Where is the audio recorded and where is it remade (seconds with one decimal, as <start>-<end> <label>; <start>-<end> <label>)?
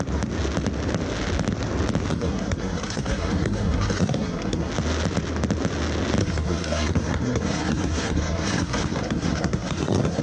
0.0-2.1 recorded; 2.1-4.7 remade; 4.7-6.2 recorded; 6.2-10.2 remade